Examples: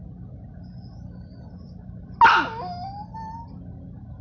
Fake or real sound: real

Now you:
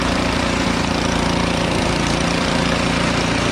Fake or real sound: fake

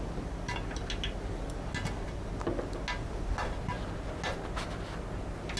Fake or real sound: real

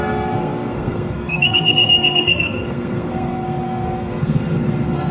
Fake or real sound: fake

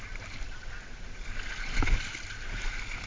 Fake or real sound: real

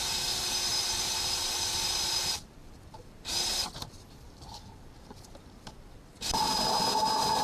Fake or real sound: fake